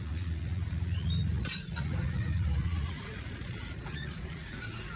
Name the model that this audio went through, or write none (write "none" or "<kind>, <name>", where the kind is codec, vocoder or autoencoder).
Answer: vocoder, Vocos